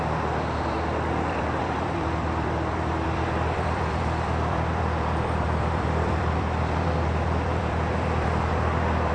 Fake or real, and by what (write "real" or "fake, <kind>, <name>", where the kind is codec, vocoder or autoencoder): fake, vocoder, BigVGAN v2